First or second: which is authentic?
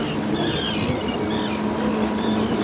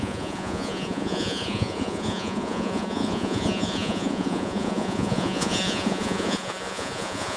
first